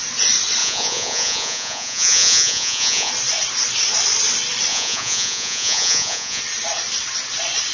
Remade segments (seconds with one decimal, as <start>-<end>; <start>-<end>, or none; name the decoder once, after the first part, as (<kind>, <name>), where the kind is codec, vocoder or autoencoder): 0.6-3.1 (vocoder, Vocos); 4.7-6.4